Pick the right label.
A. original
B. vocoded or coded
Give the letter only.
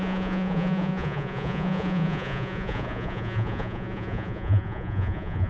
B